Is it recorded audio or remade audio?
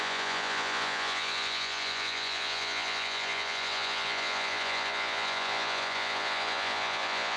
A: remade